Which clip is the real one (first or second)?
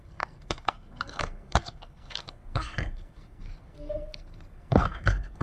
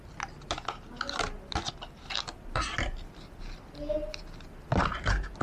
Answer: second